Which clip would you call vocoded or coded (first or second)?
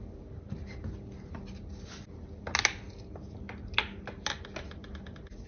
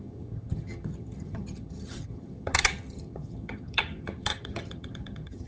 second